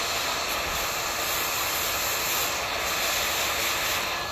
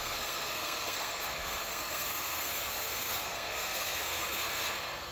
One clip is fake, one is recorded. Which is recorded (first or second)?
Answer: first